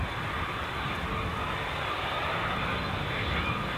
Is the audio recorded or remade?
recorded